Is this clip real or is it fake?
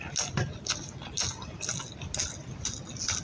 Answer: real